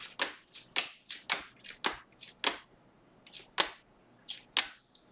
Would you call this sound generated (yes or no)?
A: no